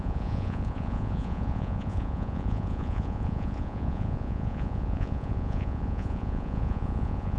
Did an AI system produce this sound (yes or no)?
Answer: yes